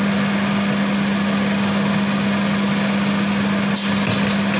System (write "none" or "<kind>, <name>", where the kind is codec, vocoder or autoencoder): none